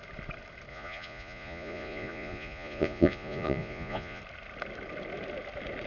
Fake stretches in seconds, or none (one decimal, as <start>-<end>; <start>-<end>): 0.7-4.2